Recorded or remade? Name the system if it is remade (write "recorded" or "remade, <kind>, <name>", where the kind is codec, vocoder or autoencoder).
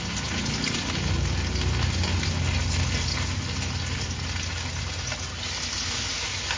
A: recorded